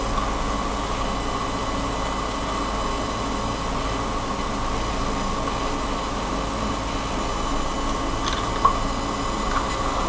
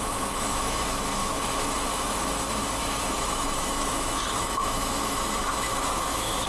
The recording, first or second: first